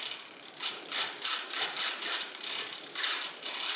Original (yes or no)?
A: no